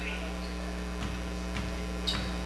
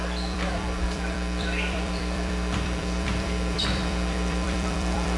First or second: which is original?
first